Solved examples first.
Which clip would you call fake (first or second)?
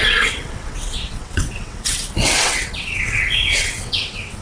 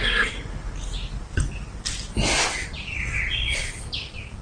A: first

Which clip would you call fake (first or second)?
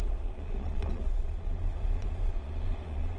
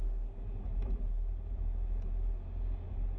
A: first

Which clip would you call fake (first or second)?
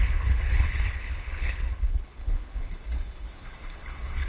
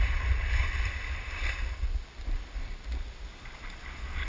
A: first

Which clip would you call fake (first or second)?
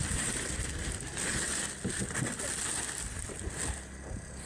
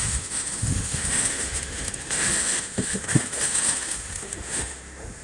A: second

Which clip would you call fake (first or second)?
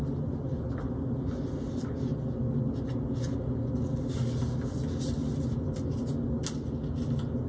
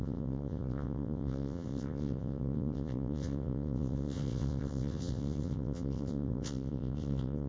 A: second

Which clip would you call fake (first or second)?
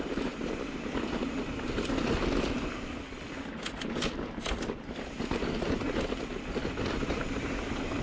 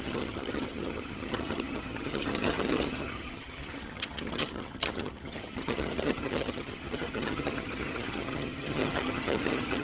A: second